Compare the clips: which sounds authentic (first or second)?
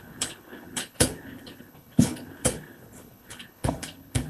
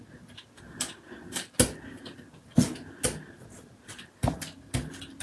second